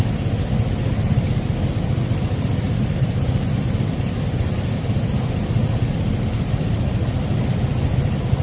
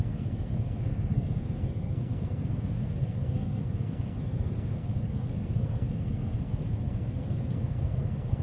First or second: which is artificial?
second